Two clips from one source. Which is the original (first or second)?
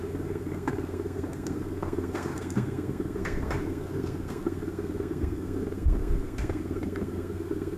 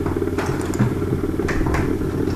second